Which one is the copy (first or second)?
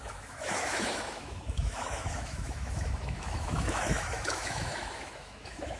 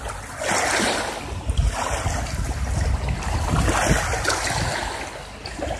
first